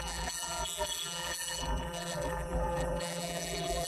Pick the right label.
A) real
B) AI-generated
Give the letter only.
B